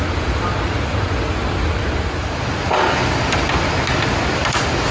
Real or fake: real